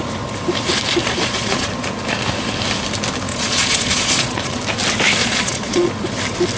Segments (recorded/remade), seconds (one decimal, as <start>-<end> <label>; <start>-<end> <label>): 0.0-1.0 recorded; 1.0-1.7 remade; 1.7-3.3 recorded; 3.3-4.6 remade; 4.6-5.2 recorded; 5.2-5.9 remade; 5.9-6.6 recorded